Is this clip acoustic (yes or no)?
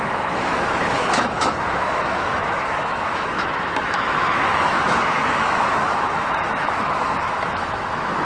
no